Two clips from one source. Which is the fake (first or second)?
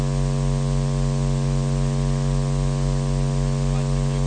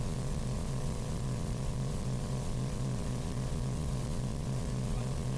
second